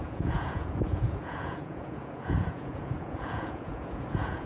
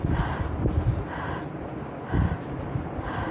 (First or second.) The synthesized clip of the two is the first